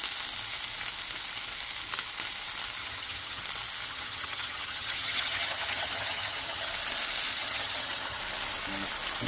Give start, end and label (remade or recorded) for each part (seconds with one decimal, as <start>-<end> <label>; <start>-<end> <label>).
0.0-2.8 recorded; 2.8-3.4 remade; 3.4-3.9 recorded; 3.9-6.7 remade; 6.7-7.3 recorded; 7.3-8.2 remade; 8.2-9.3 recorded